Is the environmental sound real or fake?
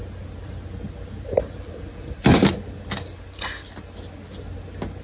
real